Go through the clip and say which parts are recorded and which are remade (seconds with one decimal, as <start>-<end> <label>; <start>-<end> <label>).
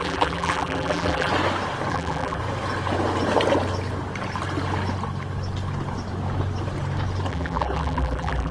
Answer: 0.0-1.3 remade; 1.3-1.9 recorded; 1.9-2.4 remade; 2.4-7.3 recorded; 7.3-8.5 remade